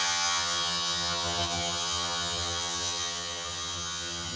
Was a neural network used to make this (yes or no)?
yes